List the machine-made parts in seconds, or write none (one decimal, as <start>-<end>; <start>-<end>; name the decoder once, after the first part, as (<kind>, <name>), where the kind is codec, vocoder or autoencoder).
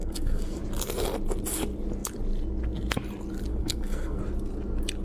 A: 0.0-0.6 (codec, SNAC); 3.5-4.2